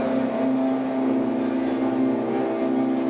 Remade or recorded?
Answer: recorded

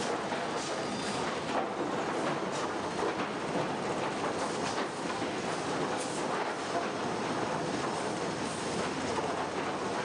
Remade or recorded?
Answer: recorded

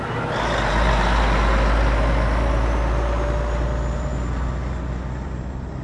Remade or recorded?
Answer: recorded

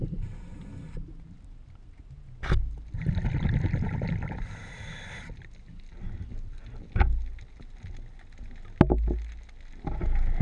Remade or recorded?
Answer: recorded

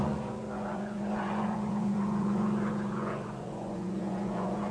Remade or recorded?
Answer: remade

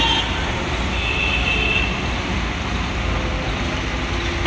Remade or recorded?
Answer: recorded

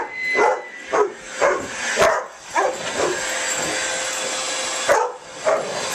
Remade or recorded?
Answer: recorded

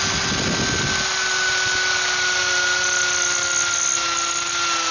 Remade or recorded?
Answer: recorded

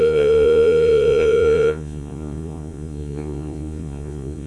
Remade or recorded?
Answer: remade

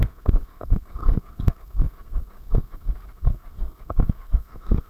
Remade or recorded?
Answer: remade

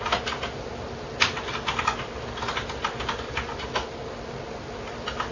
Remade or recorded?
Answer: recorded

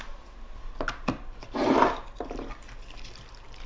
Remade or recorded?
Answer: recorded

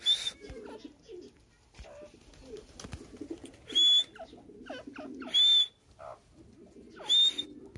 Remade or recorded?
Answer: recorded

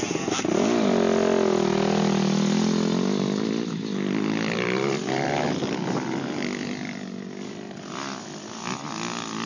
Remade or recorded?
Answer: recorded